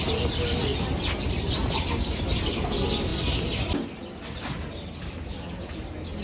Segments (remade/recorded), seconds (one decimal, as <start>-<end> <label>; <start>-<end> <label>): 0.0-6.2 recorded